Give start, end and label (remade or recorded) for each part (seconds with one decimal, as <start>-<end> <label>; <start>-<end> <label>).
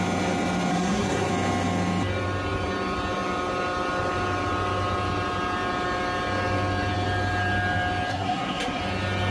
0.0-0.7 recorded; 0.7-1.3 remade; 1.3-8.1 recorded; 8.1-8.8 remade; 8.8-9.3 recorded